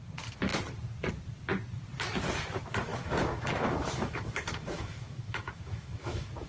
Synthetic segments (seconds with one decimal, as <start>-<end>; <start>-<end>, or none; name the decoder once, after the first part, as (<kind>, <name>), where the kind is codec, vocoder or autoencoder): 2.9-6.5 (autoencoder, DAC-VAE)